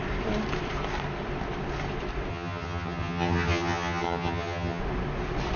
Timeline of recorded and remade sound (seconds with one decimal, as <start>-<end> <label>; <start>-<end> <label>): 0.0-2.3 recorded; 2.3-4.8 remade; 4.8-5.6 recorded